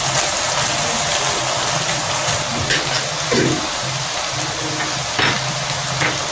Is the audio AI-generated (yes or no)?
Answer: no